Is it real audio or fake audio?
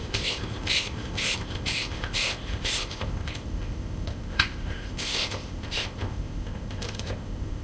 fake